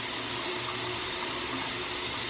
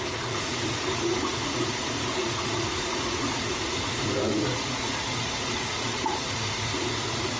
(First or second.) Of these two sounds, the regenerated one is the second